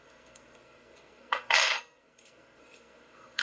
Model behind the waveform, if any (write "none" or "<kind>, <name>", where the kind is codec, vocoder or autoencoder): codec, SNAC